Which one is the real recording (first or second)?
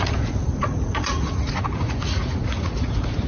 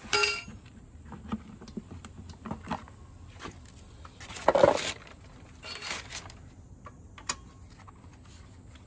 second